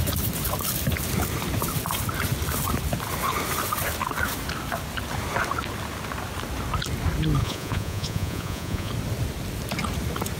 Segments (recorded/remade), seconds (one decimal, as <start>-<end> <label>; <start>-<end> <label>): 0.0-7.4 recorded; 7.4-8.9 remade; 8.9-10.4 recorded